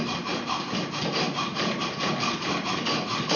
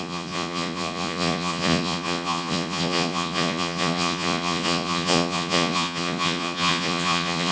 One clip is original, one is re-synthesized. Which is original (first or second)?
first